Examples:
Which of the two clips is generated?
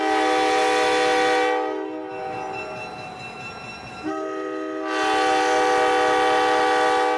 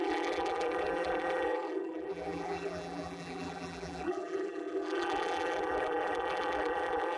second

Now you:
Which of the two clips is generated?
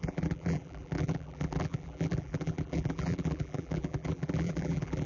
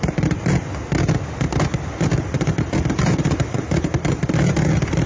first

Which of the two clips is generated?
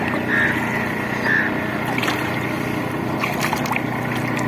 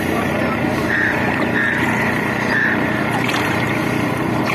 second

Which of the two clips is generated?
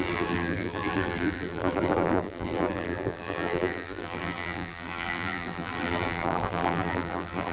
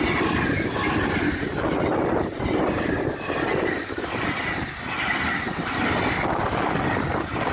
first